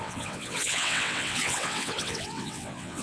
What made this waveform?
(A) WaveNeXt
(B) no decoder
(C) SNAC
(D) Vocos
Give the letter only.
A